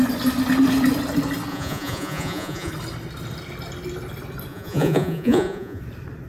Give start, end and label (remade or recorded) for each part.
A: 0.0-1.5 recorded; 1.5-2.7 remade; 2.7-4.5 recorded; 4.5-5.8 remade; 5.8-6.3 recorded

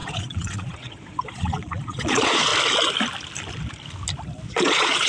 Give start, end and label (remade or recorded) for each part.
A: 0.0-2.5 remade; 2.5-4.5 recorded; 4.5-5.1 remade